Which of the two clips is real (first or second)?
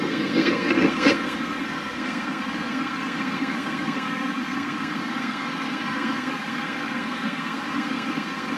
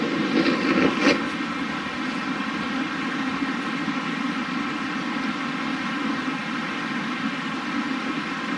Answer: second